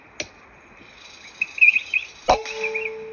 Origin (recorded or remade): recorded